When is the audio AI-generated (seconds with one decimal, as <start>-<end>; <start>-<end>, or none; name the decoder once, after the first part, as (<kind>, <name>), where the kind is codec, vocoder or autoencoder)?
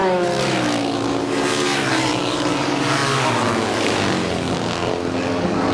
0.0-5.7 (codec, DAC)